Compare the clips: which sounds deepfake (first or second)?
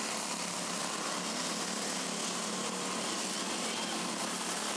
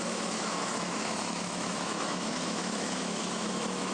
second